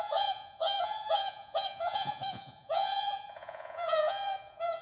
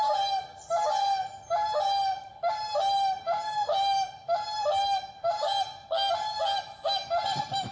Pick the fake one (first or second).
first